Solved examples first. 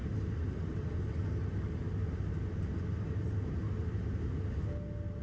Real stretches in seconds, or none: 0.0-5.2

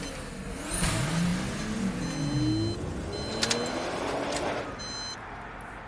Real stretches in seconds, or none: 0.0-5.9

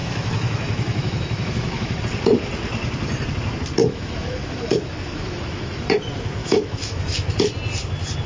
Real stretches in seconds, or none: 2.0-3.8; 5.8-6.4; 7.0-8.3

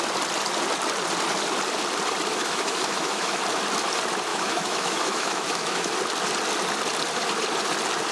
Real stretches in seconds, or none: 0.0-2.3; 3.4-4.3; 5.9-8.1

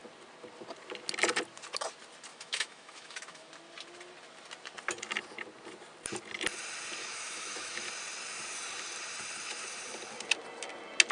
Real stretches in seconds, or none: 0.0-2.3; 3.5-7.0; 7.9-11.1

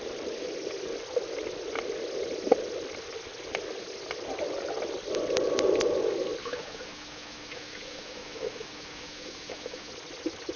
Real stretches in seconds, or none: 0.0-6.4; 9.9-10.6

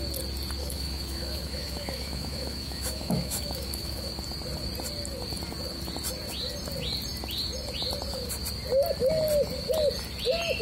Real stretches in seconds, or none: 0.0-0.6; 4.1-10.6